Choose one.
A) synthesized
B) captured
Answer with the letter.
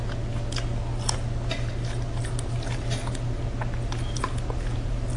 B